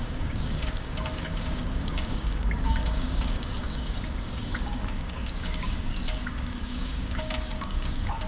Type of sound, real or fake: fake